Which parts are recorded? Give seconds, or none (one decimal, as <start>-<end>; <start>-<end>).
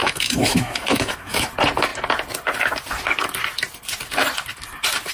1.5-5.1